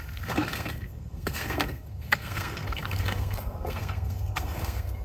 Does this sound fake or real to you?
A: fake